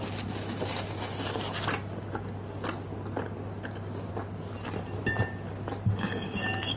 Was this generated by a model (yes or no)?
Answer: no